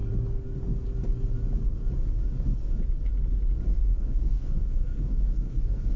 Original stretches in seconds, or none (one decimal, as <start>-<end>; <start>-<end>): 0.0-3.7